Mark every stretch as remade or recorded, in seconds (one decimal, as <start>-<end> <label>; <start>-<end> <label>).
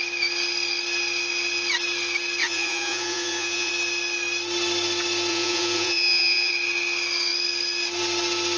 0.0-2.4 recorded; 2.4-3.7 remade; 3.7-5.3 recorded; 5.3-6.5 remade; 6.5-8.6 recorded